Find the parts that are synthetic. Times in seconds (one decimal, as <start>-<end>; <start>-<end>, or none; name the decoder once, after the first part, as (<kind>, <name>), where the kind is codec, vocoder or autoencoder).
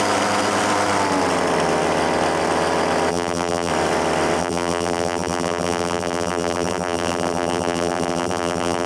3.1-3.7 (vocoder, BigVGAN v2); 4.4-8.9